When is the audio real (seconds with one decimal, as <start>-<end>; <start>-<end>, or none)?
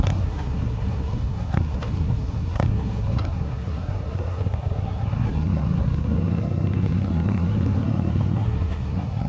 none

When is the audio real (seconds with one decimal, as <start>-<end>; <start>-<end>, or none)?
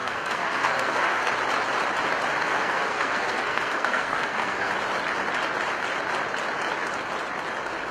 1.3-2.4; 4.7-7.9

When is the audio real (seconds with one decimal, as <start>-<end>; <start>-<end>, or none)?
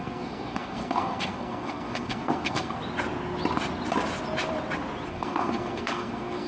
2.8-5.1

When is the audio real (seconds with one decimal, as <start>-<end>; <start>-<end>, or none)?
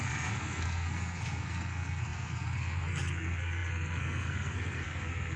none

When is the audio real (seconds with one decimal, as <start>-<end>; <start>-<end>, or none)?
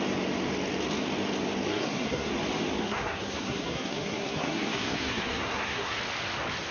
0.0-1.7; 2.3-2.8; 6.0-6.7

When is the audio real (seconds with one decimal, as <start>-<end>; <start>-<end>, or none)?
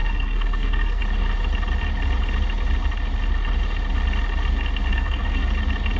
1.0-4.9; 5.5-6.0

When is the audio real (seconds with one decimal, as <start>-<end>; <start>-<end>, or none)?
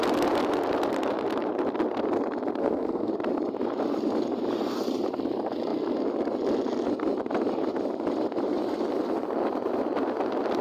0.0-2.6; 3.1-10.6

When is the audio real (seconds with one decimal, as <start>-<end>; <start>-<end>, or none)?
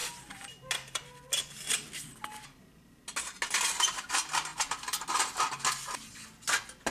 0.0-6.9